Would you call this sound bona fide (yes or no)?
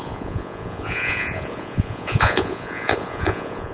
no